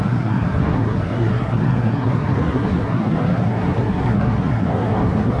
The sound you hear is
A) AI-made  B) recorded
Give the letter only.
A